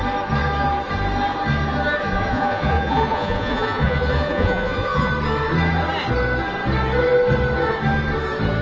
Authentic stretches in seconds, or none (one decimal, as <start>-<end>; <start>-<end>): 0.0-2.1; 5.1-8.6